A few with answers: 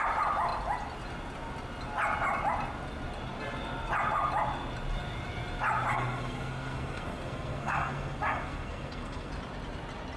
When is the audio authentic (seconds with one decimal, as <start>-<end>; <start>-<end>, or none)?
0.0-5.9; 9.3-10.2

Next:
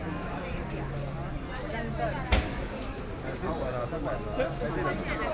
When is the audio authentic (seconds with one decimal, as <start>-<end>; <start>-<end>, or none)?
0.0-5.3

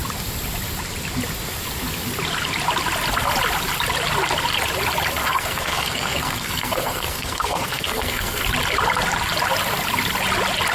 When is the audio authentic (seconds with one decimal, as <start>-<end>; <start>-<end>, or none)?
0.0-5.2; 8.4-10.7

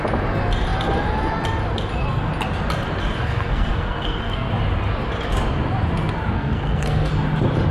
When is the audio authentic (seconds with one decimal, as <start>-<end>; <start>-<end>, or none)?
0.0-3.2; 4.5-6.3; 7.1-7.7